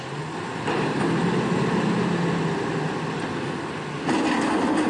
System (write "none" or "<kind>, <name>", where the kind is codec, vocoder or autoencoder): none